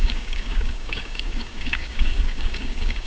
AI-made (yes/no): yes